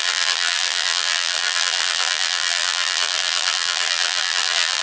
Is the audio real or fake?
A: fake